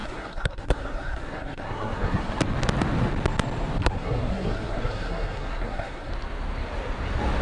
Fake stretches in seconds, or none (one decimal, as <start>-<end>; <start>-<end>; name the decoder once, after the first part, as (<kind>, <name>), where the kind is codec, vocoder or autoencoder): 0.0-2.4 (codec, SNAC); 3.8-6.1